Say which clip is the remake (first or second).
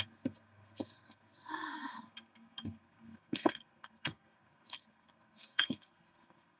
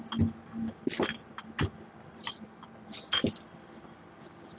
first